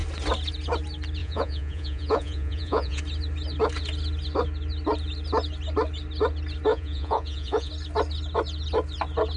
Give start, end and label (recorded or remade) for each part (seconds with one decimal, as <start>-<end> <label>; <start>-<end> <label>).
0.0-1.2 recorded; 1.2-3.0 remade; 3.0-6.7 recorded; 6.7-7.7 remade; 7.7-9.4 recorded